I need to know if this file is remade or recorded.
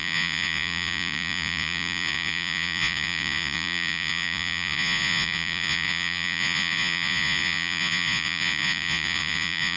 remade